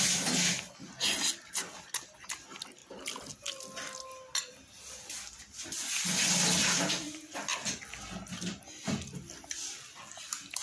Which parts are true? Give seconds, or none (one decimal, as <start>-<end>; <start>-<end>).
0.0-10.6